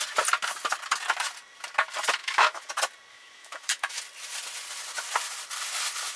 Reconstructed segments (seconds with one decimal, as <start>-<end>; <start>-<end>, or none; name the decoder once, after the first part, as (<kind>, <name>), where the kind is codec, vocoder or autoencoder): 2.2-2.7 (autoencoder, DAC-VAE); 3.1-4.0